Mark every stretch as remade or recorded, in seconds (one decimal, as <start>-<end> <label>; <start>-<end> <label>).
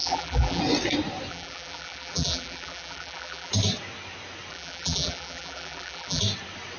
0.0-0.6 remade; 0.6-1.3 recorded; 1.3-3.5 remade; 3.5-4.5 recorded; 4.5-6.2 remade; 6.2-6.8 recorded